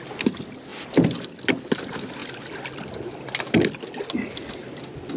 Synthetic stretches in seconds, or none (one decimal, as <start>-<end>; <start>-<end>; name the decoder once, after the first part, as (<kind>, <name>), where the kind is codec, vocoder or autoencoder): none